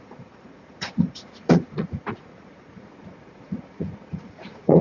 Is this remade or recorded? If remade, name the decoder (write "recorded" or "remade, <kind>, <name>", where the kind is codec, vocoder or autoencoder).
remade, vocoder, Vocos